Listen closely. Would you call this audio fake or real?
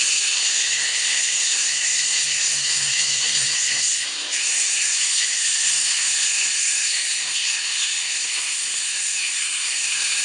fake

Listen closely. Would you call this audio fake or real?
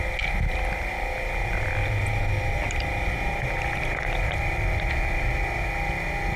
real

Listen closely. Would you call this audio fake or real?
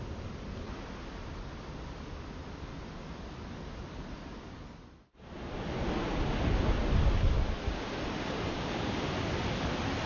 real